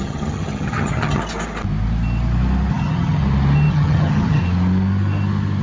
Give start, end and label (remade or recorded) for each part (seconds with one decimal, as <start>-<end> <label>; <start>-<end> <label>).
0.0-1.2 remade; 1.2-2.7 recorded; 2.7-3.2 remade; 3.2-3.7 recorded; 3.7-4.4 remade; 4.4-5.6 recorded